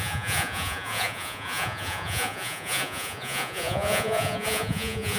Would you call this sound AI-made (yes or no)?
yes